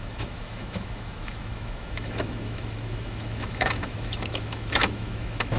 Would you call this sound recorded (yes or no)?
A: no